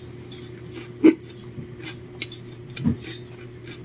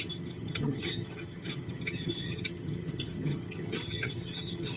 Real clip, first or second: first